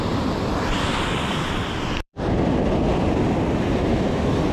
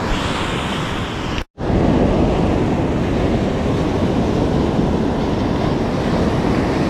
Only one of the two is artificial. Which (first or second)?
first